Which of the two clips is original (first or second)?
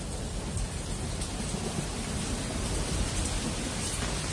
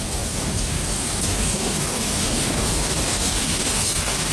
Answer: first